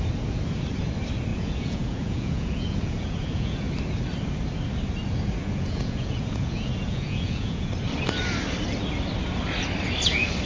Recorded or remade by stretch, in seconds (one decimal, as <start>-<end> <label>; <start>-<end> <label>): 0.0-1.3 recorded; 1.3-3.7 remade; 3.7-5.4 recorded; 5.4-7.7 remade; 7.7-10.5 recorded